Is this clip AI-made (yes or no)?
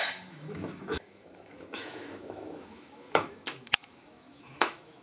yes